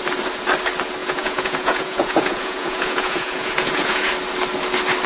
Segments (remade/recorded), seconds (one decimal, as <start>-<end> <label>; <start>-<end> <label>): 0.0-1.0 recorded; 1.0-4.1 remade; 4.1-5.1 recorded